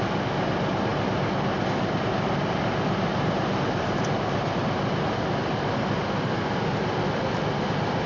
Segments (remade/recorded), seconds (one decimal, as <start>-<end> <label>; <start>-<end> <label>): 0.0-3.1 recorded; 3.1-4.9 remade; 4.9-8.1 recorded